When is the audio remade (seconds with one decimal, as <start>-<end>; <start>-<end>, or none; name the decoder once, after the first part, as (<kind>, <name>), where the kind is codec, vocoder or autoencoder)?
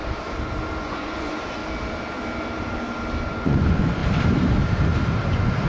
0.8-1.6 (vocoder, Vocos); 3.3-4.0; 5.3-5.7